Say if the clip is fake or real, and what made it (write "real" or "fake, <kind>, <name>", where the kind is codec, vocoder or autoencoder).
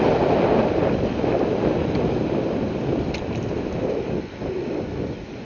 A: real